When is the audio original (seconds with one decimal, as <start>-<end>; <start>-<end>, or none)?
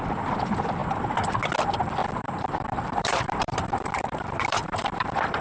0.0-2.0